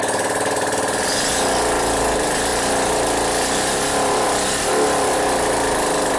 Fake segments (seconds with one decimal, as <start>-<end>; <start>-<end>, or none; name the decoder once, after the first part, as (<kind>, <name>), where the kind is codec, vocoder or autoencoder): none